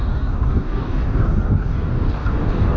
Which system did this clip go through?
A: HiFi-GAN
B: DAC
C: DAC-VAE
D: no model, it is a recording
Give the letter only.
B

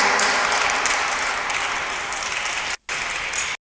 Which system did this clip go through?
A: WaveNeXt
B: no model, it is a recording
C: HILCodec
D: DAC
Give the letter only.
B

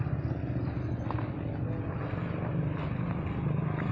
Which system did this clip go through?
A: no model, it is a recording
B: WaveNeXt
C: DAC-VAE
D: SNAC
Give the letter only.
A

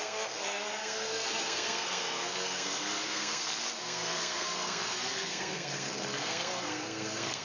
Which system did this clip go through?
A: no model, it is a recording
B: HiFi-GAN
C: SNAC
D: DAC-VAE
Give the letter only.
C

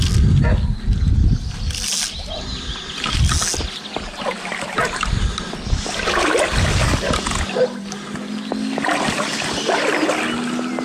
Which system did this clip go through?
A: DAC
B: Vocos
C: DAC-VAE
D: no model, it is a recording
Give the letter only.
D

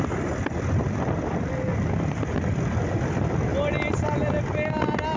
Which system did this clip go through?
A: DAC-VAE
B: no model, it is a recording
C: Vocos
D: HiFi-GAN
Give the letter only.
B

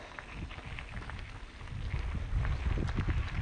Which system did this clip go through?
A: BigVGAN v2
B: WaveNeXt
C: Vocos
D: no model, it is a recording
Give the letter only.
D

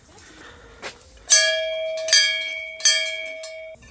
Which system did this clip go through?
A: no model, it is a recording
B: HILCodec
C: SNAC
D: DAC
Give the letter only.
A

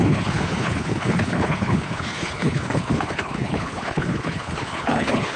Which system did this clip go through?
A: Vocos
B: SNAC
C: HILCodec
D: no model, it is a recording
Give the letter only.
C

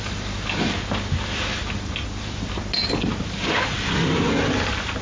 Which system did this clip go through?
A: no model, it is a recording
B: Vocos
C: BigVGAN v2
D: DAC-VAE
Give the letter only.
A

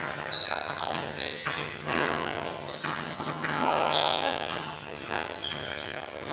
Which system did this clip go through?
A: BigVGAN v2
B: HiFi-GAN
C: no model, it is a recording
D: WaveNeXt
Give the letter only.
B